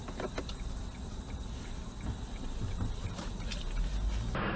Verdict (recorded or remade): recorded